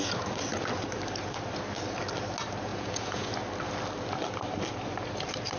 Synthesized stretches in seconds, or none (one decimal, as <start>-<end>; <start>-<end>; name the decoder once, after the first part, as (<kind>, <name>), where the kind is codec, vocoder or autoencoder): 2.7-3.3 (vocoder, Vocos)